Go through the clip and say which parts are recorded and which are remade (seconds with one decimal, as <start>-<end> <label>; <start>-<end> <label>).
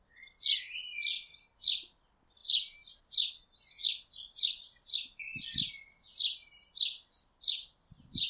0.0-8.3 recorded